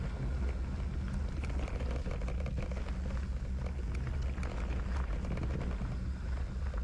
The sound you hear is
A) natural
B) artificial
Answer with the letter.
A